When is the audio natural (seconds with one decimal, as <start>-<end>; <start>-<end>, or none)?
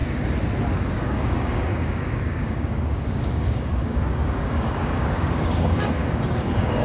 0.0-0.8